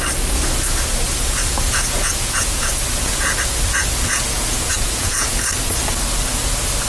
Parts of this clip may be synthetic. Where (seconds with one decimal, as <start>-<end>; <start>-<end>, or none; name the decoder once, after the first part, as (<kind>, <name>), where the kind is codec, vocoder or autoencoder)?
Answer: 1.4-5.5 (vocoder, Vocos)

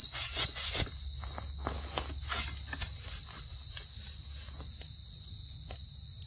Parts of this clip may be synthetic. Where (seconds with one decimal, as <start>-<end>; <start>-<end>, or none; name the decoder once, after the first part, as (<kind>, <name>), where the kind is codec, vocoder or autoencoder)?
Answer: 0.0-0.7 (vocoder, Vocos)

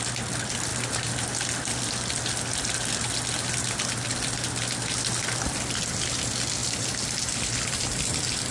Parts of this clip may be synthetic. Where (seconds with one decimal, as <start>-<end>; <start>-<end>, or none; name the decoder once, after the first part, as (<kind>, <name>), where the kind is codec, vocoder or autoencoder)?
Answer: none

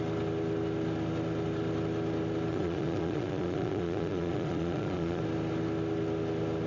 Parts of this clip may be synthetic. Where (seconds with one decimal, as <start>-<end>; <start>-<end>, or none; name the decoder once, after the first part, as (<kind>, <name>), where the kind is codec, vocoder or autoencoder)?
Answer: 2.5-5.2 (vocoder, Vocos)